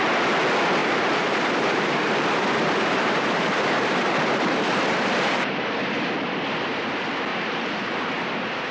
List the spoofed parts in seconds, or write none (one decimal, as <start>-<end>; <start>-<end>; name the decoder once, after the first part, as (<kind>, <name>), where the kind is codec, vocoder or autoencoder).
0.8-5.6 (vocoder, BigVGAN v2); 7.3-8.7